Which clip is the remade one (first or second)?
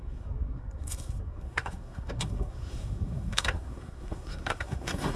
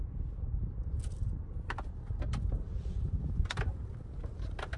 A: first